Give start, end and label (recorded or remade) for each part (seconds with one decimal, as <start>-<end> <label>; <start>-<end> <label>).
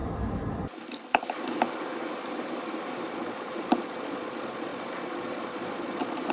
0.0-3.1 recorded; 3.1-6.3 remade